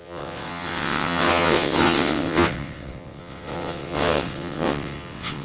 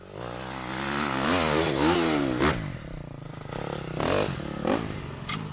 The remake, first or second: first